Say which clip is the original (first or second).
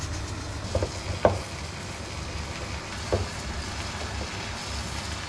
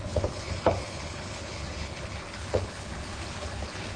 first